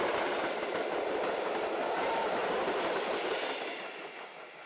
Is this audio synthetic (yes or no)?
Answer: no